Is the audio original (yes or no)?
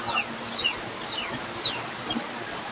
yes